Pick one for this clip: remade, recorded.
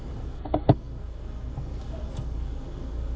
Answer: remade